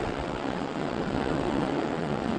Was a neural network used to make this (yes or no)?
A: yes